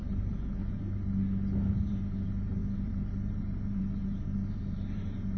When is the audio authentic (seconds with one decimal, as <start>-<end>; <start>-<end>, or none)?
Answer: 0.0-1.9